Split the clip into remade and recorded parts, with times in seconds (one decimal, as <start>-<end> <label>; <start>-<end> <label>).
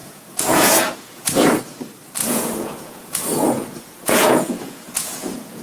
0.0-1.6 remade; 1.6-2.2 recorded; 2.2-5.6 remade